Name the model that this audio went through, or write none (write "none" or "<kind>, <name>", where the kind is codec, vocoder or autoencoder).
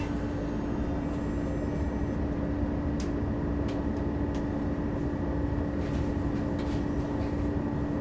none